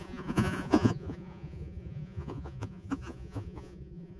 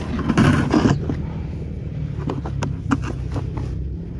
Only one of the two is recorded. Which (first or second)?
second